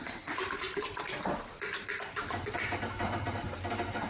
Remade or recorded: remade